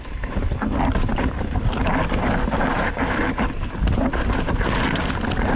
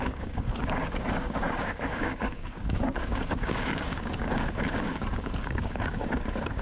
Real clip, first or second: first